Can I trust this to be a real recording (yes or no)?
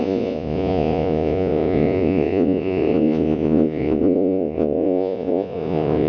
no